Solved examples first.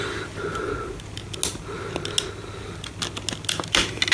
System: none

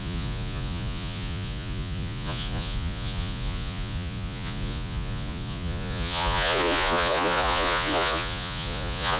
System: vocoder, Vocos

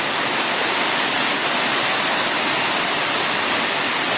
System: none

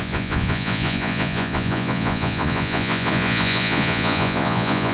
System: vocoder, Vocos